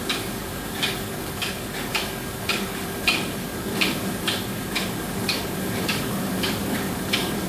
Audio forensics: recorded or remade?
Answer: remade